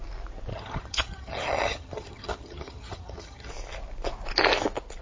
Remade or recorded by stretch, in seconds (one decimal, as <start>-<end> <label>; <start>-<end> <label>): 0.0-0.5 recorded; 0.5-3.5 remade; 3.5-5.0 recorded